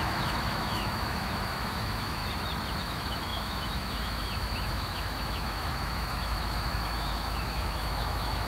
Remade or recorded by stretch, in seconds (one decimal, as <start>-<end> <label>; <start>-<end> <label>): 0.0-2.2 remade; 2.2-2.8 recorded; 2.8-8.5 remade